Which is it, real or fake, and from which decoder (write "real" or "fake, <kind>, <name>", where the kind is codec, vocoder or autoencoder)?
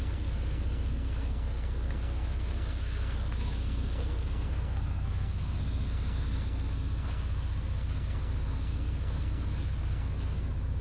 fake, codec, SNAC